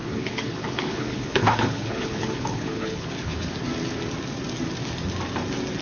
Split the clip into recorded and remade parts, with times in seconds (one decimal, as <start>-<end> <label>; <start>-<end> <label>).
0.0-3.5 remade; 3.5-5.8 recorded